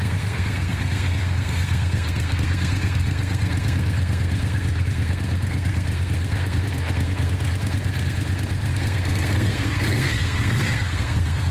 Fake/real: fake